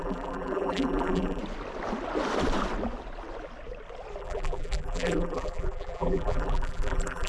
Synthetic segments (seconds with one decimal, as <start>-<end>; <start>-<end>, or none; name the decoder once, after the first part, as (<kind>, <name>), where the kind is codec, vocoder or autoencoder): 0.0-1.4 (vocoder, BigVGAN v2); 4.2-7.3